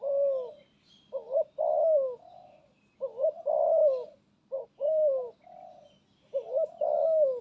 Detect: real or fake real